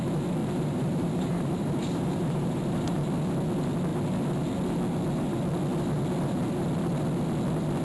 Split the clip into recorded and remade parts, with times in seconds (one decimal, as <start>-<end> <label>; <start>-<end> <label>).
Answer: 0.0-0.4 recorded; 0.4-3.1 remade; 3.1-7.8 recorded